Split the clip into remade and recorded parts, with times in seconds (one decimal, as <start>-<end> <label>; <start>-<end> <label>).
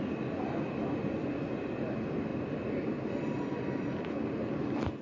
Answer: 0.0-5.0 recorded